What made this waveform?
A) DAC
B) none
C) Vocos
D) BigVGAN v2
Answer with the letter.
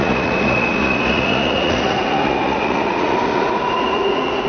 C